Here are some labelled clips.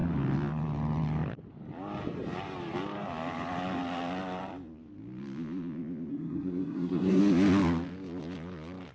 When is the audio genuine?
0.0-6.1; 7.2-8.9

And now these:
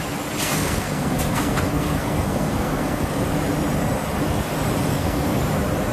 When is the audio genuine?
0.0-0.4; 3.2-4.9; 5.4-5.9

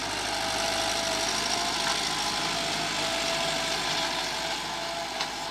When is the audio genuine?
0.0-5.5

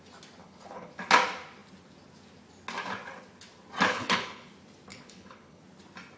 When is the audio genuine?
0.0-0.4; 0.9-3.9; 4.5-4.9; 5.6-6.2

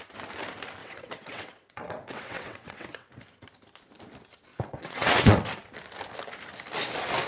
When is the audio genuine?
0.0-0.8; 3.2-4.5; 5.4-7.3

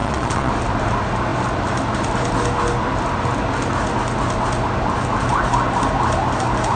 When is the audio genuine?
0.5-6.8